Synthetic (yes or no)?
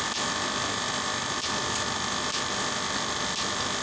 no